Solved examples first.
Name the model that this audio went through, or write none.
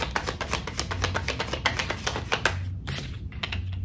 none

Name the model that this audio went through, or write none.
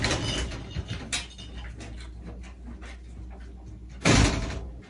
none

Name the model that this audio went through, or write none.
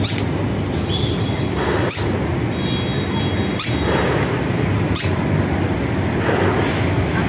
none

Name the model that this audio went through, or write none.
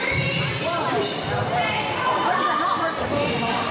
vocoder, BigVGAN v2